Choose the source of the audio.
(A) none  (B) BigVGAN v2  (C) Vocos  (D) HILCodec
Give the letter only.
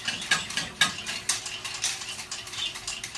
A